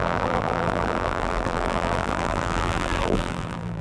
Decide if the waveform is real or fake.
fake